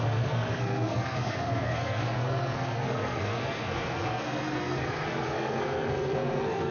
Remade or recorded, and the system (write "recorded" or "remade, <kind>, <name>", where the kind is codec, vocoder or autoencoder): remade, codec, SNAC